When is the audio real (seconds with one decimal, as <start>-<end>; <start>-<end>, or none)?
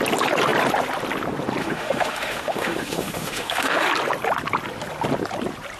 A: 0.0-1.6; 3.9-5.8